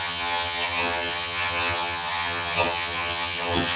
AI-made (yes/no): yes